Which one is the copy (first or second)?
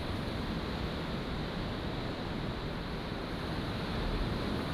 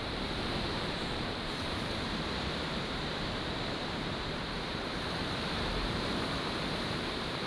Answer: second